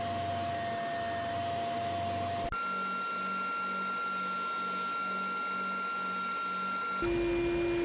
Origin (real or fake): real